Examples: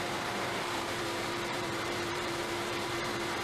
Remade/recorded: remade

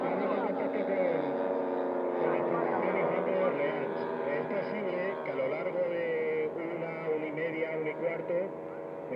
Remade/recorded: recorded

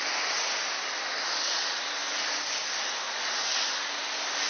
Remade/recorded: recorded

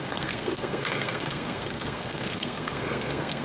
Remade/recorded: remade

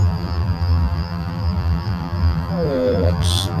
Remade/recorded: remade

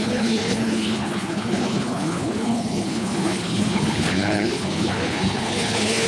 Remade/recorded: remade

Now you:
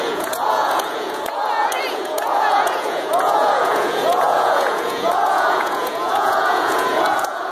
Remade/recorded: remade